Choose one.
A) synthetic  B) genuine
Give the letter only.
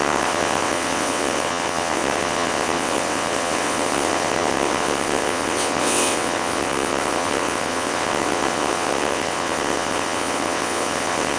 A